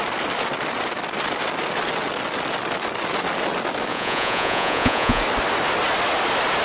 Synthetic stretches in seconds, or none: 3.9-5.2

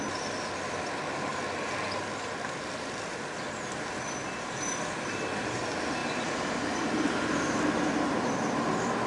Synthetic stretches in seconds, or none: none

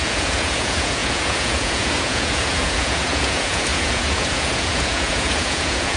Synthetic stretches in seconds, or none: 0.0-6.0

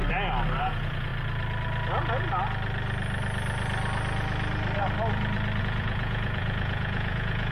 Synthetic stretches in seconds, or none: 0.6-1.1; 5.6-7.5

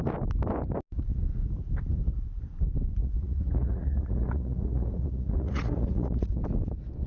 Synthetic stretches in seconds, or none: 3.0-6.4